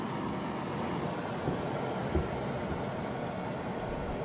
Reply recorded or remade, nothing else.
recorded